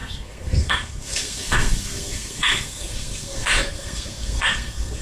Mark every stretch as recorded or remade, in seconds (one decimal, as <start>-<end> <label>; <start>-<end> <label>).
0.0-5.0 remade